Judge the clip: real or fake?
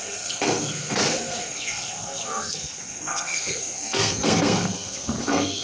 fake